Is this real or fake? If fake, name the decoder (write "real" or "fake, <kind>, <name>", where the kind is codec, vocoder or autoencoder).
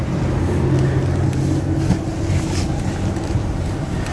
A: real